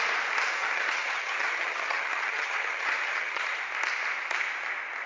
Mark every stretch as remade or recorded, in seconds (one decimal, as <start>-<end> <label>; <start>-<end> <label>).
0.0-0.5 recorded; 0.5-3.6 remade; 3.6-5.1 recorded